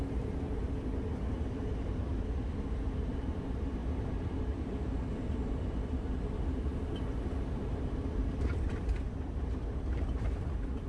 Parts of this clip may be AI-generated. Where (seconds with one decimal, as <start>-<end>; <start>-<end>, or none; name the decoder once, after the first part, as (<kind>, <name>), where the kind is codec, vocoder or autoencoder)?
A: 0.0-0.6 (vocoder, BigVGAN v2); 1.2-2.1; 3.1-3.8; 4.4-6.7; 7.4-10.9